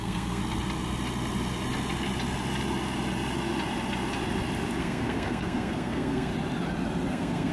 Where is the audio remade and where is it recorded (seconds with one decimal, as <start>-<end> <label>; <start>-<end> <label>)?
0.0-0.4 remade; 0.4-4.8 recorded; 4.8-6.3 remade; 6.3-7.1 recorded; 7.1-7.5 remade